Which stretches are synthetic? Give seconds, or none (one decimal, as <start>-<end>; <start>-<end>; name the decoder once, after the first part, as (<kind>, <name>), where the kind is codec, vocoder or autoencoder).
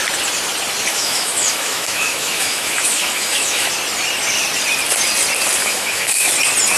0.9-3.7 (autoencoder, DAC-VAE); 5.6-6.3